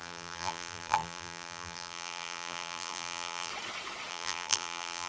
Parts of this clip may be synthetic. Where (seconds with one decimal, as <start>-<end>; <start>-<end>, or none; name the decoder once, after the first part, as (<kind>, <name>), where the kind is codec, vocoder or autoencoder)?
0.0-3.5 (vocoder, BigVGAN v2); 4.1-5.1